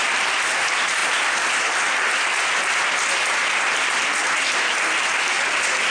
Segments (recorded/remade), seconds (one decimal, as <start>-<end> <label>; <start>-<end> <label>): 0.0-5.9 recorded